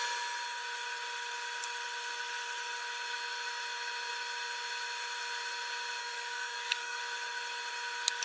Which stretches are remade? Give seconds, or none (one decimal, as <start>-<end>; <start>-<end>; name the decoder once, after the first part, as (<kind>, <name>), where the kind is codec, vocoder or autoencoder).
6.0-7.0 (codec, DAC)